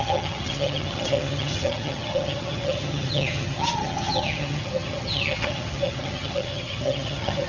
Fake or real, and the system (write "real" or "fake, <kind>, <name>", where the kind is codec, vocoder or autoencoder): fake, vocoder, HiFi-GAN